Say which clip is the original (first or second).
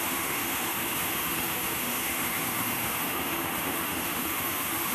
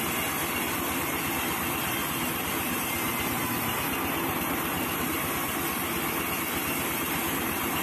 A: second